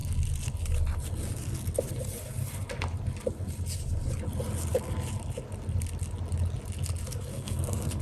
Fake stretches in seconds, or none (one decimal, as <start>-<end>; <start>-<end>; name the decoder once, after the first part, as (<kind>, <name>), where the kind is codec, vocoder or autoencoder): 7.3-8.0 (codec, SNAC)